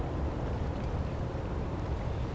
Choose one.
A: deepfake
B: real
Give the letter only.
B